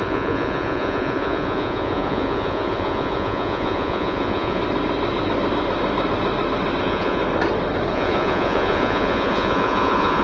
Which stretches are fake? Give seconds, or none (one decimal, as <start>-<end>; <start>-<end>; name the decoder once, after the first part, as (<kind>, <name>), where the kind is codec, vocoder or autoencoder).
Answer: 0.0-4.6 (vocoder, Vocos); 6.8-7.2; 7.9-10.2